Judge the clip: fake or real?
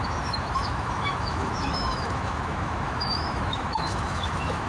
fake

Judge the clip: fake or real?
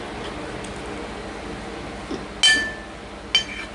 real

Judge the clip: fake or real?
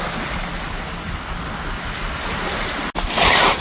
real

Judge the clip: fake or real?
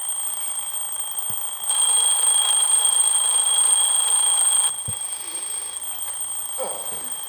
real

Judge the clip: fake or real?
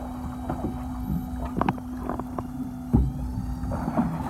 real